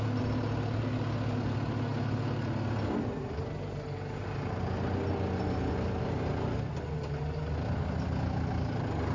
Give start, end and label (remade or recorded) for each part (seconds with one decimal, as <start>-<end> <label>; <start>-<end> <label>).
0.0-9.1 recorded